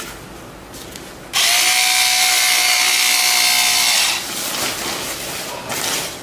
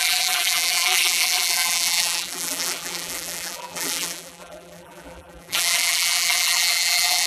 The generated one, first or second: second